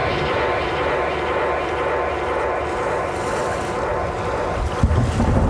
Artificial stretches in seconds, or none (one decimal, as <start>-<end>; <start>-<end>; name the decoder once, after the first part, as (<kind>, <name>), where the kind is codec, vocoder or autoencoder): 0.0-3.0 (vocoder, BigVGAN v2)